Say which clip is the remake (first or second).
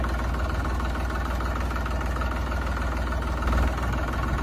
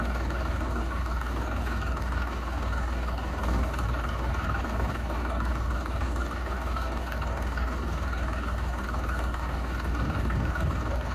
second